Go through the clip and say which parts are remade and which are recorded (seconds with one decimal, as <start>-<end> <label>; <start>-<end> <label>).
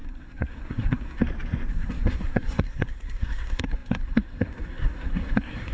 0.0-1.2 remade; 1.2-1.7 recorded; 1.7-5.7 remade